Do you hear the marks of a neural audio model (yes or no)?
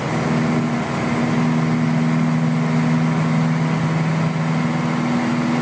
no